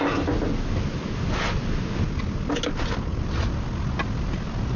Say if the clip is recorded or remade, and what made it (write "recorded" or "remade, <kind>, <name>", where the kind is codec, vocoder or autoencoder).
recorded